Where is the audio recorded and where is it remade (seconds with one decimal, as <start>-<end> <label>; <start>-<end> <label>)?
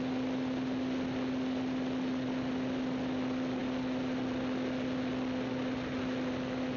0.0-6.8 recorded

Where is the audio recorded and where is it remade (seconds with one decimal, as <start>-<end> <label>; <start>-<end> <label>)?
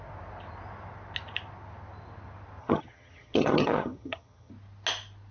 0.0-2.6 recorded; 2.6-4.5 remade; 4.5-5.3 recorded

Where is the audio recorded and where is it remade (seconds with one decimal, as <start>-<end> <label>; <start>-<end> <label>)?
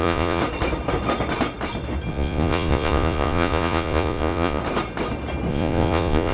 0.0-0.4 remade; 0.4-2.1 recorded; 2.1-4.6 remade; 4.6-5.5 recorded; 5.5-6.3 remade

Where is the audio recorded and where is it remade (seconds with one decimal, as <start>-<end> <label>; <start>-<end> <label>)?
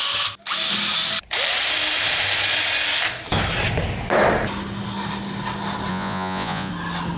0.0-5.9 recorded; 5.9-6.7 remade; 6.7-7.2 recorded